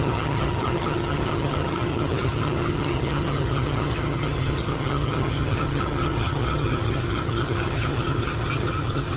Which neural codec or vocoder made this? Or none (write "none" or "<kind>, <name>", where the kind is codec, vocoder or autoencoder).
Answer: vocoder, HiFi-GAN